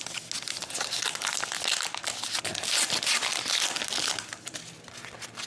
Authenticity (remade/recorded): recorded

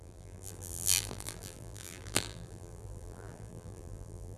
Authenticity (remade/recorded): remade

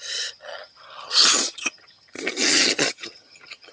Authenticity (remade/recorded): remade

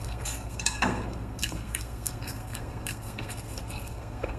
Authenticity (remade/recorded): remade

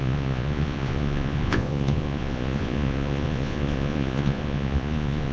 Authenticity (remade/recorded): remade